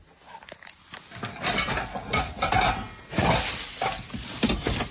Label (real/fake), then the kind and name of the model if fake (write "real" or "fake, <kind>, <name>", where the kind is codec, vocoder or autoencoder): real